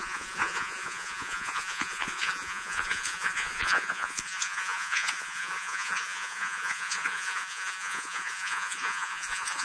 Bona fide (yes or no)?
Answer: no